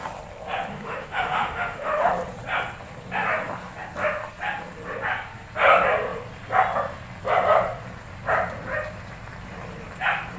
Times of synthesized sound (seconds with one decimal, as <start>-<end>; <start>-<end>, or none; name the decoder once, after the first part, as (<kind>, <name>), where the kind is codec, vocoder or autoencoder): 0.7-2.1 (autoencoder, DAC-VAE)